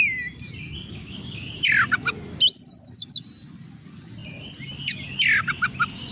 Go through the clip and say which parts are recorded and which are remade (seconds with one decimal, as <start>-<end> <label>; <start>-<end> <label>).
0.0-1.0 recorded; 1.0-1.6 remade; 1.6-6.1 recorded